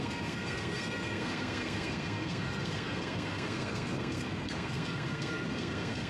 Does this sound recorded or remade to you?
remade